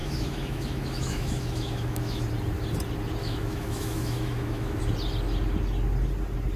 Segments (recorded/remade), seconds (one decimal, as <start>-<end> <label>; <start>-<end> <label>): 0.0-2.2 remade; 2.2-3.2 recorded; 3.2-4.8 remade; 4.8-6.6 recorded